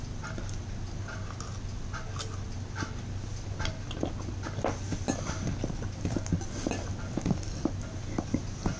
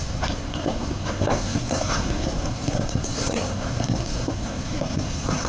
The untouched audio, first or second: first